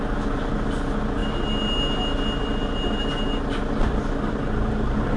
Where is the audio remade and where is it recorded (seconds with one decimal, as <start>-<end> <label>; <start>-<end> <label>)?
0.0-5.2 recorded